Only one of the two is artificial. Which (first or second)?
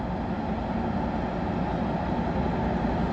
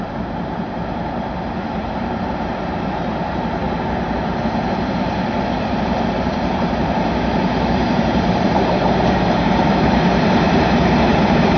second